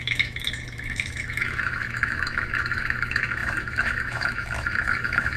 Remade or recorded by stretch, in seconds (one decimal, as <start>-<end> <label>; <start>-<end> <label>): 0.0-5.4 remade